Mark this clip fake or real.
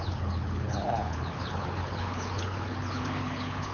fake